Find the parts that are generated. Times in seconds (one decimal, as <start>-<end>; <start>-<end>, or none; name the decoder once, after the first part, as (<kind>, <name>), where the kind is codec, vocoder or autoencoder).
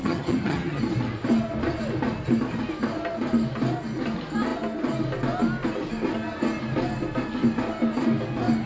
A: 0.0-0.8 (vocoder, HiFi-GAN)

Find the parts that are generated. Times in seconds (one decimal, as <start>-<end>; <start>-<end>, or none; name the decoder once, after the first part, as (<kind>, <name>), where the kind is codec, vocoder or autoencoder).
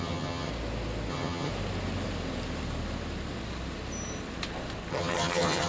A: 0.0-0.5 (vocoder, HiFi-GAN); 1.1-1.5; 4.9-5.7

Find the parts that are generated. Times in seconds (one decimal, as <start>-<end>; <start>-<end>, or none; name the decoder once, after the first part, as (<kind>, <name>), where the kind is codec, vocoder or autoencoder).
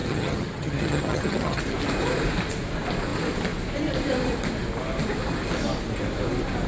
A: 0.0-1.6 (vocoder, HiFi-GAN)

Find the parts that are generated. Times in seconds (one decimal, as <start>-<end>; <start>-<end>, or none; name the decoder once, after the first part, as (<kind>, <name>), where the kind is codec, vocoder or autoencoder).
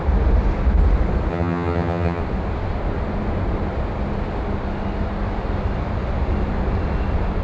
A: 1.3-2.2 (vocoder, HiFi-GAN)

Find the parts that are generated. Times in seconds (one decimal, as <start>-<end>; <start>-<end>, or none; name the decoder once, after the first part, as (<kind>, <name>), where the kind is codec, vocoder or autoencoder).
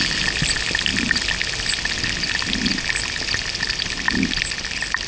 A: none